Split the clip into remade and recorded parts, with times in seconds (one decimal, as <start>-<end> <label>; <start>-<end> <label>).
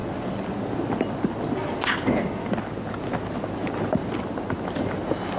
0.0-5.4 recorded